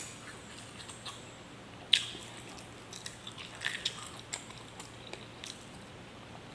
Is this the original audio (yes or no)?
yes